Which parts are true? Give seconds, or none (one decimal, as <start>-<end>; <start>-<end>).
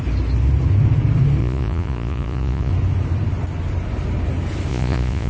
0.0-1.4; 2.7-4.7